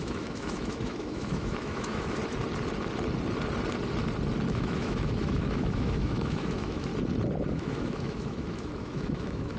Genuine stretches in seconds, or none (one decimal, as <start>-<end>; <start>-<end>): 2.2-4.5; 6.9-7.5